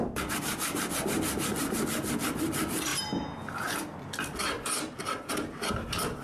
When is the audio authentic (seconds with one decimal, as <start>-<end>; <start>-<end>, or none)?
0.0-6.2